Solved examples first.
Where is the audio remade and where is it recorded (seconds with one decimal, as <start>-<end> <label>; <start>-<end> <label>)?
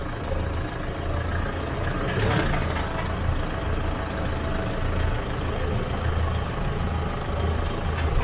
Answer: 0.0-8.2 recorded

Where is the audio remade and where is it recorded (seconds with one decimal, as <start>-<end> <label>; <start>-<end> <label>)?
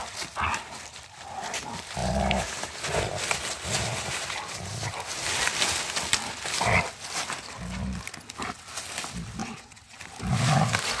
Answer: 0.0-9.4 recorded; 9.4-10.0 remade; 10.0-11.0 recorded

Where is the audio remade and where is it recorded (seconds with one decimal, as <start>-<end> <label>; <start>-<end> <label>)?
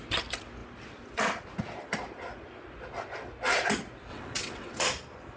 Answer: 0.0-4.1 recorded; 4.1-4.8 remade; 4.8-5.4 recorded